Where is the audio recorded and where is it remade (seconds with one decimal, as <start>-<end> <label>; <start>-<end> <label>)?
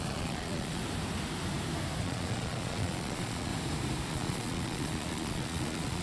0.0-0.8 remade; 0.8-2.0 recorded; 2.0-3.5 remade; 3.5-4.1 recorded; 4.1-6.0 remade